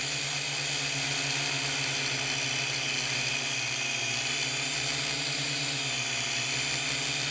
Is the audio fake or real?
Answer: real